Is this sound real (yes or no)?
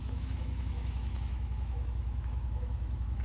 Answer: no